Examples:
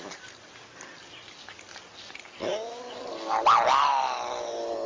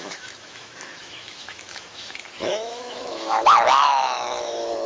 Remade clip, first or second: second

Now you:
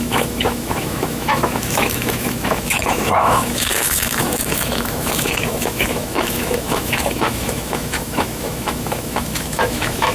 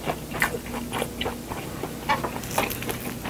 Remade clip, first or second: first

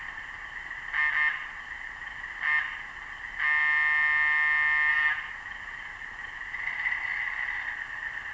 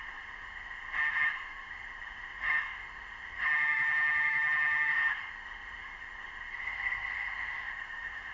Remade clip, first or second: second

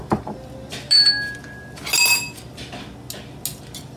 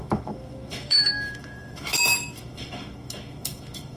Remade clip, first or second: second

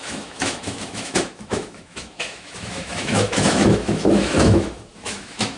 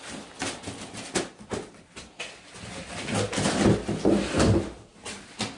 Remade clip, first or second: first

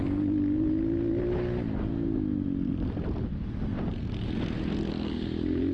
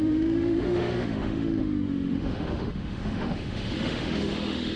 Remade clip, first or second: second